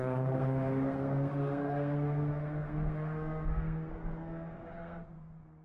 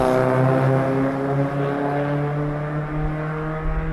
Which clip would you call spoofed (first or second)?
first